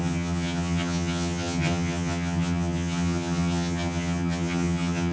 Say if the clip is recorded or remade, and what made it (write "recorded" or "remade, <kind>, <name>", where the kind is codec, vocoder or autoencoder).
remade, vocoder, HiFi-GAN